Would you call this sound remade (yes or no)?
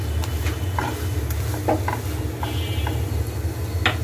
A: no